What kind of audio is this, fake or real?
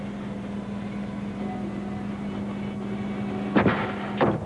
real